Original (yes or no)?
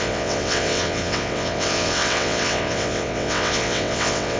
no